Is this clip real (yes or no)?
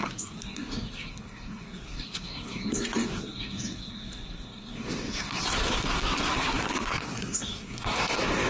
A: no